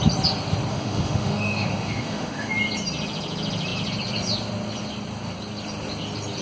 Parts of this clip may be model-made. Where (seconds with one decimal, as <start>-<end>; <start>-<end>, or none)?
0.7-2.5